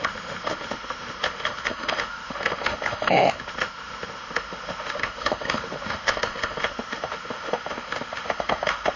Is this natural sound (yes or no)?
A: no